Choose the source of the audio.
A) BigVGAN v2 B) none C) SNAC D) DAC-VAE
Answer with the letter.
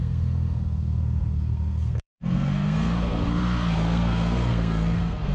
C